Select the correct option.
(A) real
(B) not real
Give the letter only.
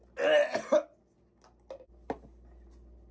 A